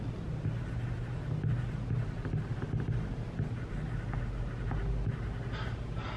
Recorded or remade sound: recorded